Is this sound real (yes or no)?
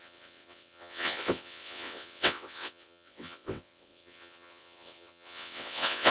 no